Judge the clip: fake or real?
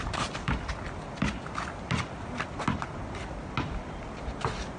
real